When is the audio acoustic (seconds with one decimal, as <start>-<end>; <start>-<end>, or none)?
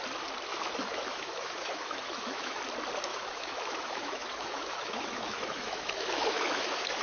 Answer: 0.0-0.5; 2.6-3.1